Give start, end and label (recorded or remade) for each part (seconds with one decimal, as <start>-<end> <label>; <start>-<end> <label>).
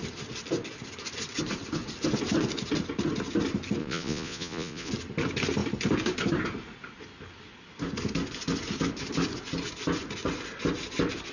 0.0-3.8 recorded; 3.8-4.9 remade; 4.9-11.3 recorded